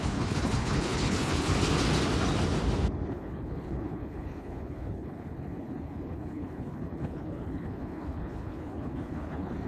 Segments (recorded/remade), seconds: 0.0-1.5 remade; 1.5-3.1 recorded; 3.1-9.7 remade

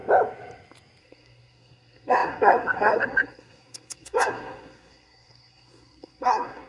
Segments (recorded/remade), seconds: 0.0-1.0 recorded; 1.0-6.7 remade

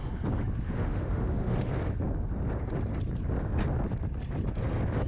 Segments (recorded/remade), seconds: 0.0-0.6 recorded; 0.6-1.7 remade; 1.7-5.1 recorded

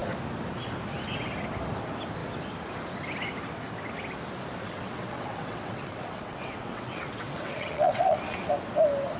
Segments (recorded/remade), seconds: 0.0-4.6 recorded; 4.6-8.5 remade; 8.5-9.2 recorded

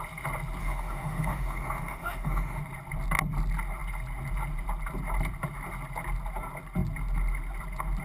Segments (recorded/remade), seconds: 0.0-0.6 recorded; 0.6-2.6 remade; 2.6-8.0 recorded

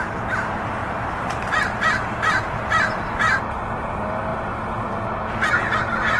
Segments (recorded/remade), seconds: 0.0-6.2 recorded

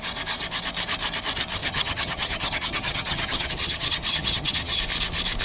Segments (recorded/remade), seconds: 0.0-1.6 recorded; 1.6-4.8 remade; 4.8-5.4 recorded

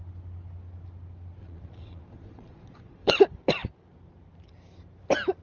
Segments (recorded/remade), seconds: 0.0-1.4 recorded; 1.4-3.1 remade; 3.1-5.4 recorded